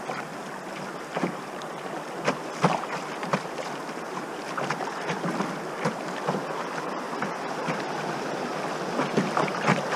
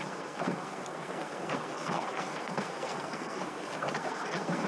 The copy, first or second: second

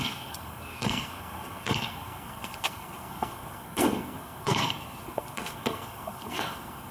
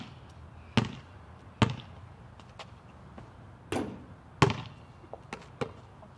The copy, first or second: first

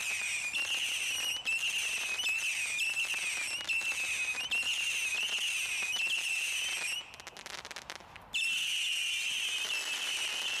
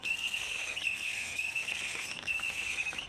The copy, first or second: second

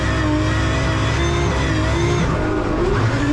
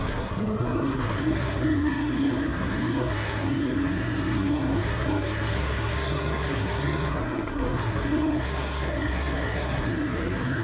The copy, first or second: second